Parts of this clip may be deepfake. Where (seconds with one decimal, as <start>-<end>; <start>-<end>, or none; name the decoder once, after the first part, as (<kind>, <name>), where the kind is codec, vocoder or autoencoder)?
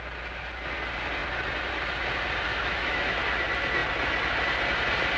2.5-3.2 (autoencoder, DAC-VAE)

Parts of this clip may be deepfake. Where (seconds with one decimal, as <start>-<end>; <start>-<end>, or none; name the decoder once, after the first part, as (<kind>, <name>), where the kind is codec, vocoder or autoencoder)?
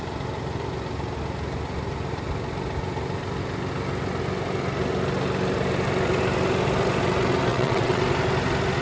7.5-8.0 (vocoder, WaveNeXt)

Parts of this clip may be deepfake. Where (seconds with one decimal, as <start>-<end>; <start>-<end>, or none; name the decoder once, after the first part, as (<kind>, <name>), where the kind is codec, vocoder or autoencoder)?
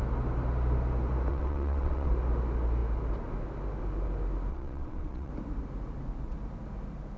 1.3-2.1 (vocoder, WaveNeXt); 4.5-5.3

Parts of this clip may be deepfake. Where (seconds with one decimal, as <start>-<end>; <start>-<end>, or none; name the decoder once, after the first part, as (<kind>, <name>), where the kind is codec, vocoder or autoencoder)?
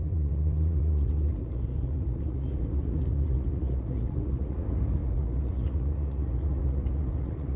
0.0-7.6 (vocoder, Vocos)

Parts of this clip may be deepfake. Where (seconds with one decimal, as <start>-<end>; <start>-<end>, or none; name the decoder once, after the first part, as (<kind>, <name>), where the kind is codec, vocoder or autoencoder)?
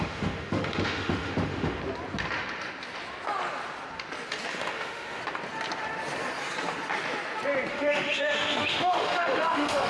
0.0-1.8 (autoencoder, DAC-VAE); 4.5-5.2; 7.7-9.9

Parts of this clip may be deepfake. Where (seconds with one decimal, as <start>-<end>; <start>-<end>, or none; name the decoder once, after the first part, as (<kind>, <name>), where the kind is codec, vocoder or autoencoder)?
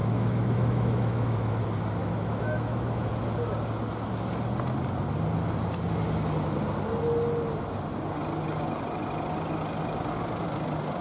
0.0-1.6 (autoencoder, DAC-VAE); 2.0-3.1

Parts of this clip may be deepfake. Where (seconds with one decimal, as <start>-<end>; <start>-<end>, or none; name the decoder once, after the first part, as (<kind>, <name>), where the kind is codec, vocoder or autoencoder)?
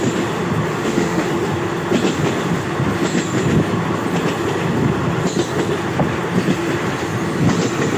0.7-1.3 (autoencoder, DAC-VAE)